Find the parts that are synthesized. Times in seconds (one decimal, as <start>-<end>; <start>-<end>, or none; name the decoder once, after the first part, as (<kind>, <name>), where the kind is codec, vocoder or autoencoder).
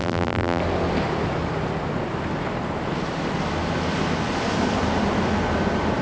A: 0.0-0.6 (vocoder, BigVGAN v2)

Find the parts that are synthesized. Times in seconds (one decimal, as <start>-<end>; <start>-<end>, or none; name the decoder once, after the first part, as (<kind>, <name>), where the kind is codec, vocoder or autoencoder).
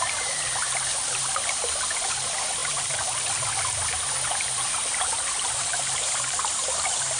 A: 0.9-1.7 (vocoder, BigVGAN v2); 2.6-7.2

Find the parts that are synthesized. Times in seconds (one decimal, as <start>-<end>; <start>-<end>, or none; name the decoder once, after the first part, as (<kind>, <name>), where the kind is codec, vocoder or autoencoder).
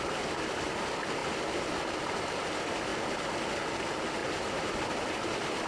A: 4.2-5.3 (vocoder, BigVGAN v2)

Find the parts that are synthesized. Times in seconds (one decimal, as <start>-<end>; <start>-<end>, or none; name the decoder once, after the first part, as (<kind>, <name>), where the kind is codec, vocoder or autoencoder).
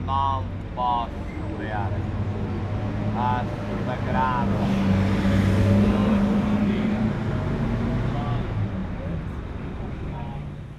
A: 6.0-7.1 (vocoder, BigVGAN v2)